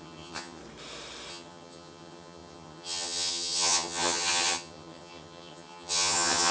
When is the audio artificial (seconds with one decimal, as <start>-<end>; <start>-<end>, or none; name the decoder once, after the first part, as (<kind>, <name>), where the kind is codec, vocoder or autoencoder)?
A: 0.0-0.6 (vocoder, HiFi-GAN); 1.3-6.5